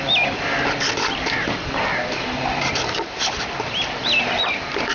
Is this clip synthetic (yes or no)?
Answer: no